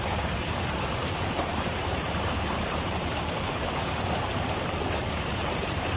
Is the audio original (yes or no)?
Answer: no